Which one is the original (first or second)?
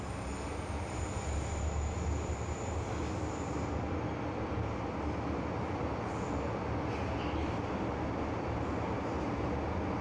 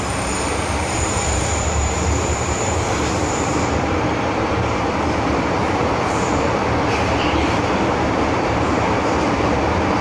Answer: first